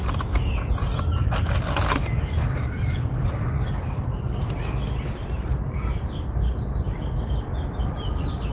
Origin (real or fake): real